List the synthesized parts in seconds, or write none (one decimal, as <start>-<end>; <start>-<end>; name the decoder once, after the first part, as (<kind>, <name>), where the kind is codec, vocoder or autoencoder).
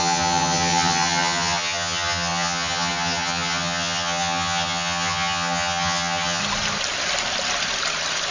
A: 0.0-6.4 (vocoder, HiFi-GAN)